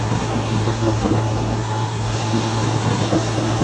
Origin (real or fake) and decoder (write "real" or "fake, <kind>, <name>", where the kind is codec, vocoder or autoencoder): fake, codec, SNAC